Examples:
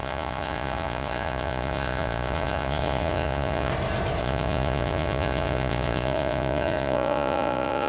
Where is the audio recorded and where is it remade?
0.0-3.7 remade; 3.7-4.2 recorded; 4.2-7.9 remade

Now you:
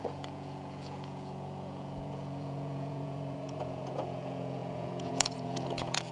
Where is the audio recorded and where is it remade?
0.0-6.1 remade

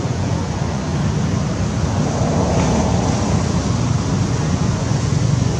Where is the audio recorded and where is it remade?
0.0-0.9 remade; 0.9-4.3 recorded; 4.3-5.6 remade

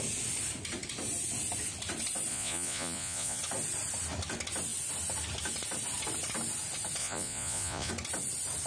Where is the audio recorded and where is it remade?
0.0-2.3 recorded; 2.3-3.4 remade; 3.4-7.0 recorded; 7.0-7.9 remade; 7.9-8.7 recorded

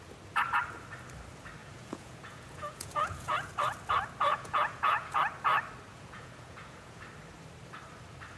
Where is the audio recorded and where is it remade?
0.0-1.6 recorded; 1.6-3.5 remade; 3.5-4.3 recorded; 4.3-5.2 remade; 5.2-5.9 recorded; 5.9-7.0 remade; 7.0-8.4 recorded